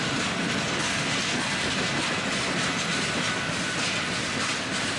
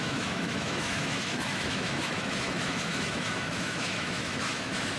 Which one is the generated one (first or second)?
second